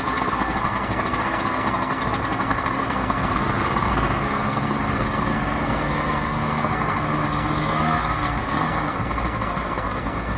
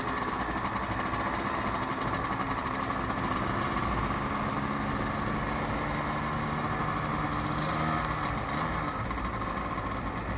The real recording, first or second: second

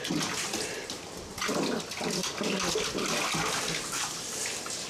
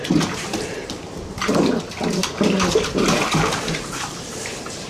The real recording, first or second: first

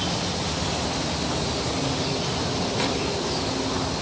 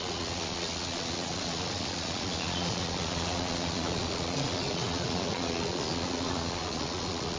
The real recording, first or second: first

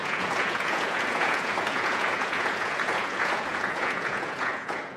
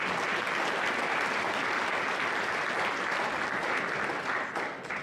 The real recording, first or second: second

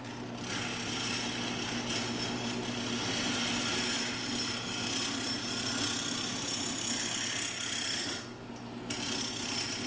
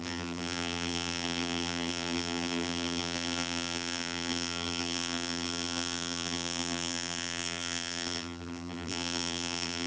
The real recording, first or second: first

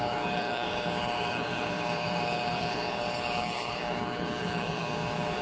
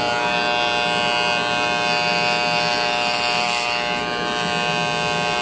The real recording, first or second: second